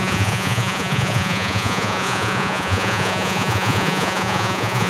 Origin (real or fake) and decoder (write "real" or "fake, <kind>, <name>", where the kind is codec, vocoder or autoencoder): fake, vocoder, Vocos